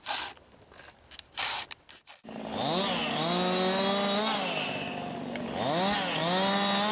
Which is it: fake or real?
real